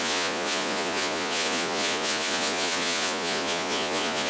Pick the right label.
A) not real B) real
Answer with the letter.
A